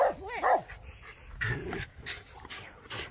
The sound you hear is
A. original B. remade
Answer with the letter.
A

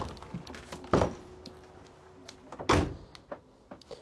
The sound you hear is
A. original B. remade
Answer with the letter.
A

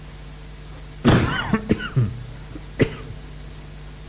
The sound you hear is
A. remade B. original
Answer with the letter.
B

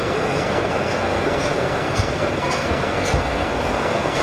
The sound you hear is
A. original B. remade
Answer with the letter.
B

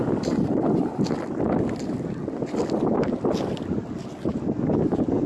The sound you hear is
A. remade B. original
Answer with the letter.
B